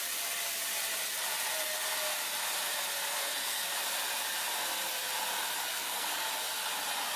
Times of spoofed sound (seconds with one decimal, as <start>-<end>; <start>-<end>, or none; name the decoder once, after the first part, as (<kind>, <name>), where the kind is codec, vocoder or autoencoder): 3.2-3.7 (codec, SNAC); 5.7-6.3

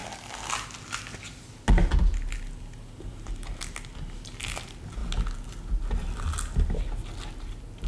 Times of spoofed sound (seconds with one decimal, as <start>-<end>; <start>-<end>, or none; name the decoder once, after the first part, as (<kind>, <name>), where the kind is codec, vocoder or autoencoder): none

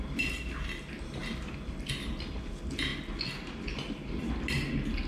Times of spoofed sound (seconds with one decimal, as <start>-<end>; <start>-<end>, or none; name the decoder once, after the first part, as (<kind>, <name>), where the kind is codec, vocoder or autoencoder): none

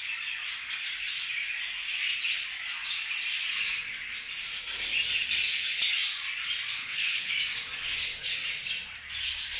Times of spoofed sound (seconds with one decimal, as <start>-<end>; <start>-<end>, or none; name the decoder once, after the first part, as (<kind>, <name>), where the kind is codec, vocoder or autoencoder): 6.8-7.3 (codec, HILCodec)

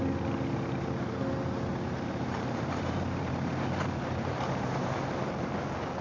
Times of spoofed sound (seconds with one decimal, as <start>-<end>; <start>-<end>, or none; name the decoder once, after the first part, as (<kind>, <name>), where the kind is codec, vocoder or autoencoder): 1.7-5.3 (vocoder, BigVGAN v2)

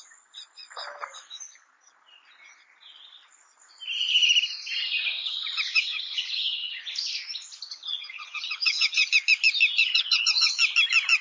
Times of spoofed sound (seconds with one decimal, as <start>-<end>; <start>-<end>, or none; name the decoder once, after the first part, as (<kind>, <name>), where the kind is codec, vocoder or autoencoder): 5.7-6.8 (vocoder, HiFi-GAN); 8.0-9.1; 9.8-10.5